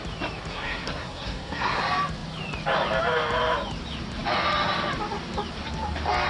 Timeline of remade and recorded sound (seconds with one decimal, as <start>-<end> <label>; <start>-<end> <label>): 0.0-0.5 recorded; 0.5-1.8 remade; 1.8-6.3 recorded